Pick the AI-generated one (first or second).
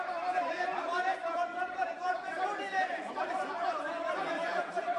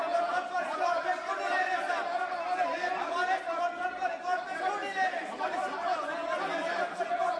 first